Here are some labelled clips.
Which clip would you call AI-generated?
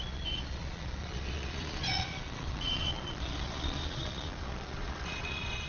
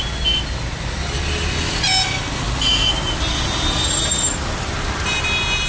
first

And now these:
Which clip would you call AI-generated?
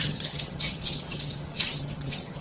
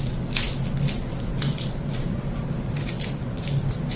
first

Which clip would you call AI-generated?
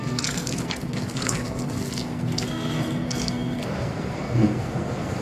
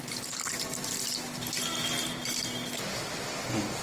first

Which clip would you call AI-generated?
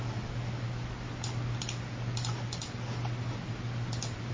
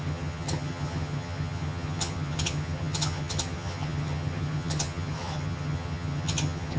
second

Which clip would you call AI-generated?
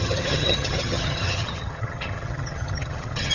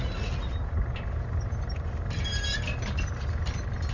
first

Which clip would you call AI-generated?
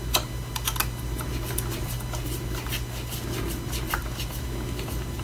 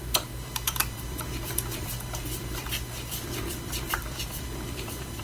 second